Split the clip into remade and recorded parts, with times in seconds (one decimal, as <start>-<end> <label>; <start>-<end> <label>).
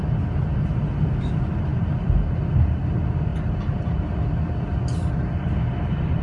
0.0-6.2 recorded